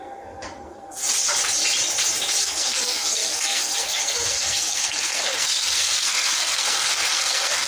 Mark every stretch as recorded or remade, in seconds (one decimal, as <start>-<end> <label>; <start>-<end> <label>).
0.0-1.0 remade; 1.0-2.4 recorded; 2.4-7.7 remade